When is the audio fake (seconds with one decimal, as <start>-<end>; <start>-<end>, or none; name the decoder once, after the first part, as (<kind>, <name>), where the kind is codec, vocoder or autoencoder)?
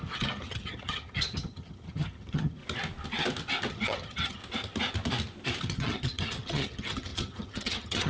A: 0.0-2.6 (vocoder, HiFi-GAN); 3.7-4.4; 5.6-8.1